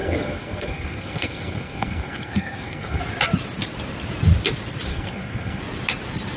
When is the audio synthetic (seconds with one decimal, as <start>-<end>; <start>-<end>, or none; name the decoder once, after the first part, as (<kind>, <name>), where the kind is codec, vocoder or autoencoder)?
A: 0.0-3.0 (codec, SNAC); 4.9-5.6